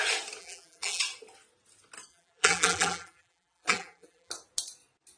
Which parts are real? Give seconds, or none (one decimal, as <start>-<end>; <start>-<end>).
0.0-0.4; 1.0-2.1; 4.3-5.2